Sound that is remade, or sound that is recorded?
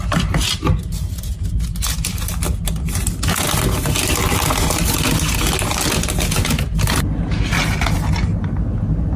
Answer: recorded